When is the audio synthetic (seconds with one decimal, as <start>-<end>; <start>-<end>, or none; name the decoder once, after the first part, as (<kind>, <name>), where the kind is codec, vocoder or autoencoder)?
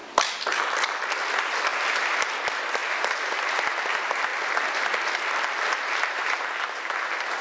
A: none